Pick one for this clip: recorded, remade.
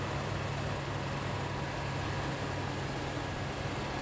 recorded